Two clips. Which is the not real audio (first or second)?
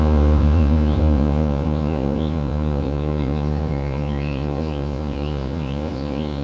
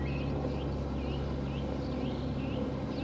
first